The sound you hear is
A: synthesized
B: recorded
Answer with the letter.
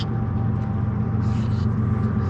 B